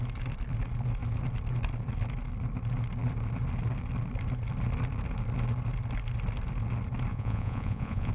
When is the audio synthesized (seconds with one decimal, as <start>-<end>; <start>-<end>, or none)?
7.1-8.1

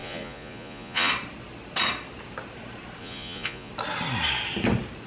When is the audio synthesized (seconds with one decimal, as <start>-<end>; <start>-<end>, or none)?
0.0-1.1; 3.0-3.7

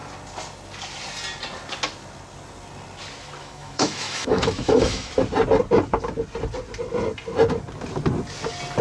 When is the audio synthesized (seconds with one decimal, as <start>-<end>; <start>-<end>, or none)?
3.4-5.1

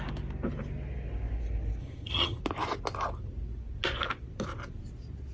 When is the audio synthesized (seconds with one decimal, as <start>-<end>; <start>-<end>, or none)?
1.8-2.4

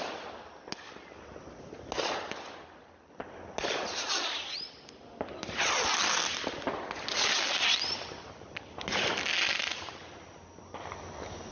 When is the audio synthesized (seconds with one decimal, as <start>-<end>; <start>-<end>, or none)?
9.7-10.6